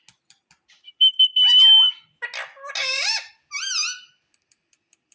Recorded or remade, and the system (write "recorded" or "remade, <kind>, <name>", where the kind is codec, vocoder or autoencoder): recorded